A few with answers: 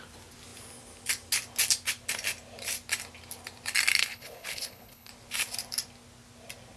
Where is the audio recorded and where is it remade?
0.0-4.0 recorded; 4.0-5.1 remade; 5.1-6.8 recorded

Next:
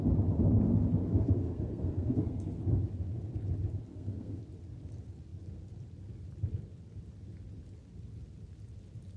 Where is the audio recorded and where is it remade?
0.0-1.0 recorded; 1.0-2.6 remade; 2.6-3.9 recorded; 3.9-4.4 remade; 4.4-9.2 recorded

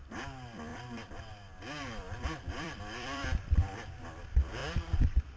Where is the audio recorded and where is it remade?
0.0-0.7 recorded; 0.7-3.9 remade; 3.9-5.4 recorded